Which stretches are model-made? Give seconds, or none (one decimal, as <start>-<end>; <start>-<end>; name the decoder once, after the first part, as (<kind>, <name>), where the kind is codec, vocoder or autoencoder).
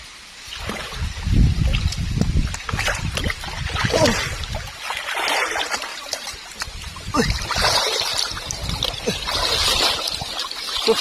1.7-3.2 (vocoder, BigVGAN v2); 5.9-9.9